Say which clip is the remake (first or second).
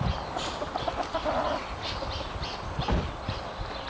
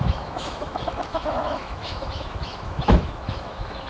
second